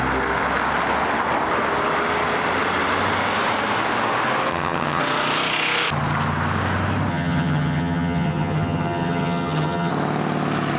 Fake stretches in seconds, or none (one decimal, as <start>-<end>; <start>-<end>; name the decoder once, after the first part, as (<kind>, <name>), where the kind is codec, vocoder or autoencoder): 4.5-5.0 (vocoder, HiFi-GAN); 7.1-9.9